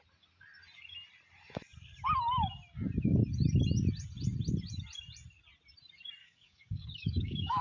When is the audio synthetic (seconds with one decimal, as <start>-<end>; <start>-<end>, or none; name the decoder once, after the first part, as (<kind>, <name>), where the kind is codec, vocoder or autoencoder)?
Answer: 6.2-7.6 (codec, DAC)